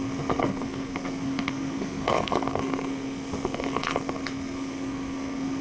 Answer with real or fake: fake